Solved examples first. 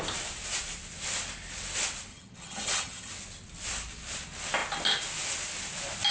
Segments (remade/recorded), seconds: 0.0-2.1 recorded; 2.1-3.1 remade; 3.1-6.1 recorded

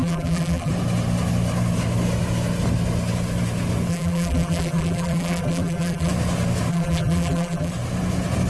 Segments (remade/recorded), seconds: 0.0-0.7 remade; 0.7-3.9 recorded; 3.9-6.1 remade; 6.1-6.7 recorded; 6.7-7.7 remade; 7.7-8.5 recorded

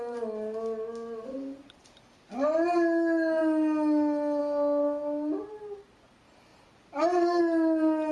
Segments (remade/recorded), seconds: 0.0-8.1 recorded

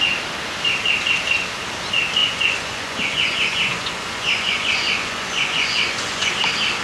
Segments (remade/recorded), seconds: 0.0-2.2 recorded; 2.2-6.3 remade; 6.3-6.8 recorded

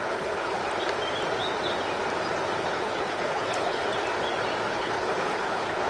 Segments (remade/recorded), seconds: 0.0-0.6 remade; 0.6-2.6 recorded; 2.6-3.8 remade; 3.8-4.7 recorded; 4.7-5.9 remade

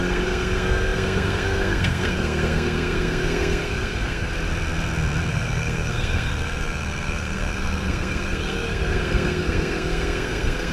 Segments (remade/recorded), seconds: 0.0-4.3 remade; 4.3-5.3 recorded; 5.3-10.7 remade